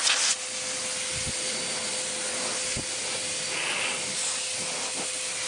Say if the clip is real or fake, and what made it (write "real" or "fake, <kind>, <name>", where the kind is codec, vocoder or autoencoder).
real